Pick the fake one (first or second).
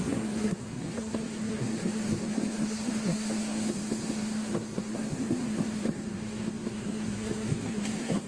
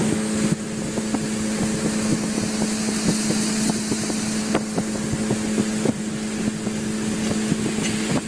first